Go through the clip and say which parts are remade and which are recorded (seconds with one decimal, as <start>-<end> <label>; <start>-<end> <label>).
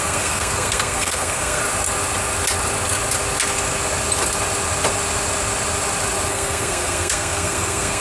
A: 0.0-1.6 remade; 1.6-6.3 recorded; 6.3-8.0 remade